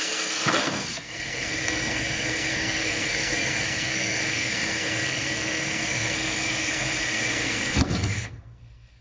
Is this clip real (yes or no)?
no